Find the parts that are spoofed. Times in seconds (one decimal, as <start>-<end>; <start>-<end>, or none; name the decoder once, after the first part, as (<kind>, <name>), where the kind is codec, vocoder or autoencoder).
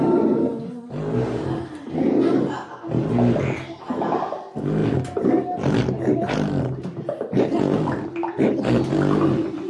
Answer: none